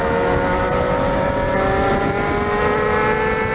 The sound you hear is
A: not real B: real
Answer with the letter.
B